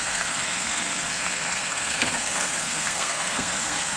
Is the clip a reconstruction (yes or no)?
yes